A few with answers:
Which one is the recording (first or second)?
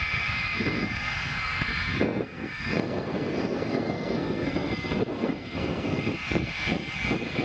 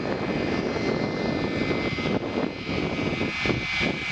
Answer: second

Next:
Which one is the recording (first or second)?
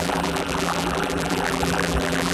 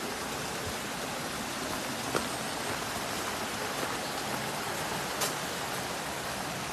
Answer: second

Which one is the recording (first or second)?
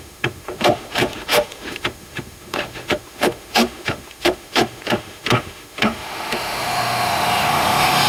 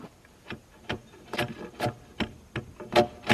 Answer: second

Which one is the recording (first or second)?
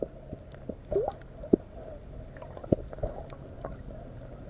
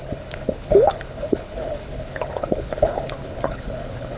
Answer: first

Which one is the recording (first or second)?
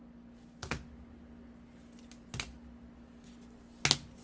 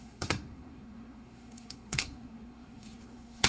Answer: first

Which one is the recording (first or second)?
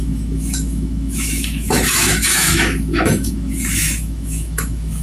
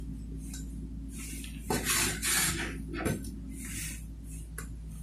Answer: second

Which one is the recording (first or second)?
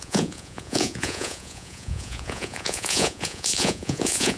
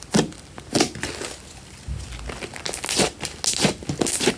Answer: second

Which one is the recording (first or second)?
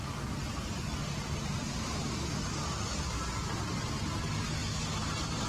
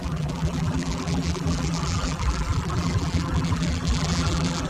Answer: first